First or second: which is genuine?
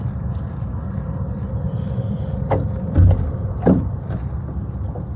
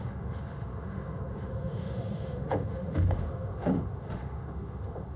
first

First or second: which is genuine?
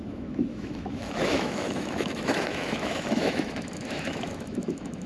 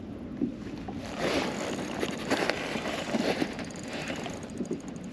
second